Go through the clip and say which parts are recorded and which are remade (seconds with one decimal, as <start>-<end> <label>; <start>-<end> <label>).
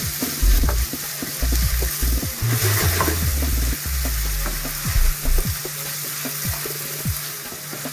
0.0-0.5 recorded; 0.5-1.1 remade; 1.1-7.9 recorded